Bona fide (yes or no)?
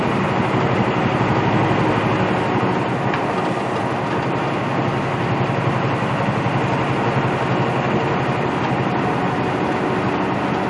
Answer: yes